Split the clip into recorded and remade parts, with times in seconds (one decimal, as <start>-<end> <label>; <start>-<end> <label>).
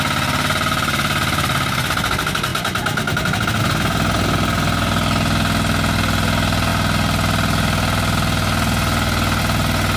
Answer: 0.0-10.0 recorded